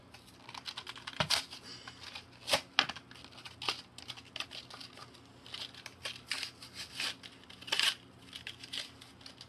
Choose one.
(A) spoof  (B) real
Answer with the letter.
B